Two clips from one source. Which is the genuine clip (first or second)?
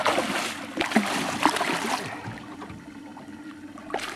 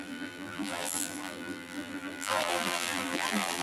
first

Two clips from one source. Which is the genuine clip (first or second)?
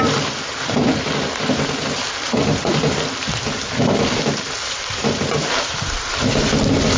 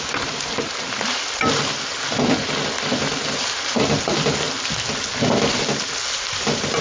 second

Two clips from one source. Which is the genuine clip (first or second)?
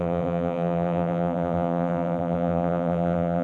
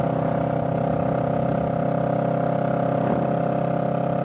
second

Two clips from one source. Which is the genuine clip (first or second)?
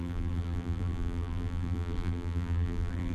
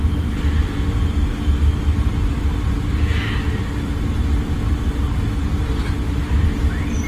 second